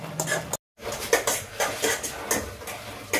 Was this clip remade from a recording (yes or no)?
no